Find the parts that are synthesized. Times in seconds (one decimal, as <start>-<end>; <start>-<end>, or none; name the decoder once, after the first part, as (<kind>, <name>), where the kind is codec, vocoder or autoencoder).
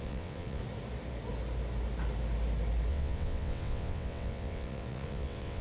0.0-0.6 (vocoder, WaveNeXt); 2.9-5.6